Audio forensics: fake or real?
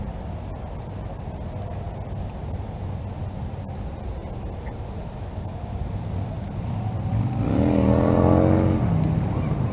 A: real